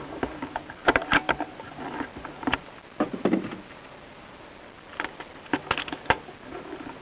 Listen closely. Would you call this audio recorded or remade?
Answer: recorded